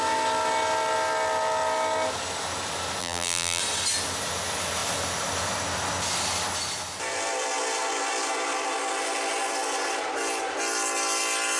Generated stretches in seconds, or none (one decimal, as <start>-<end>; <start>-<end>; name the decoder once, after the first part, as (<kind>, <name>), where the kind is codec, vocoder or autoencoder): 3.0-3.6 (vocoder, BigVGAN v2)